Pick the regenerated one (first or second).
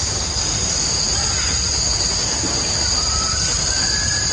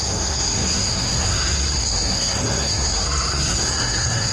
second